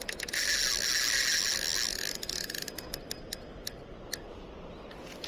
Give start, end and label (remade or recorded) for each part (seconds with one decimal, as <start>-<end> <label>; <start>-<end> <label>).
0.0-5.3 recorded